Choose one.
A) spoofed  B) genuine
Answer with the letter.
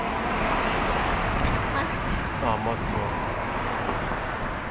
B